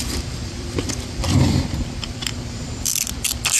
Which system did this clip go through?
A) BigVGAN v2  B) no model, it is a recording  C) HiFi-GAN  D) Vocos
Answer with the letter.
A